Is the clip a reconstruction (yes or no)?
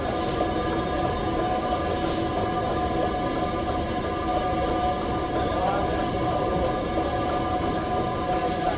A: no